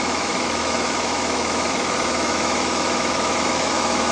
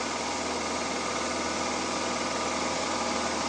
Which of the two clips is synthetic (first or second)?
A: first